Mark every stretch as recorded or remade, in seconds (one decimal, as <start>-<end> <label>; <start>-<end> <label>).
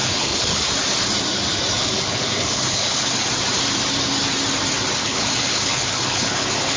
0.0-0.6 remade; 0.6-1.8 recorded; 1.8-3.3 remade; 3.3-5.0 recorded; 5.0-6.8 remade